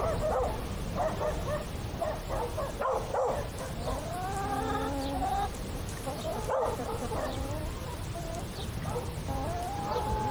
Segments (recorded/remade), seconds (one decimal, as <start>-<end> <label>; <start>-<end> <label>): 0.0-5.2 recorded; 5.2-8.0 remade; 8.0-10.3 recorded